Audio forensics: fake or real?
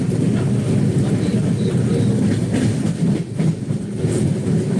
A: real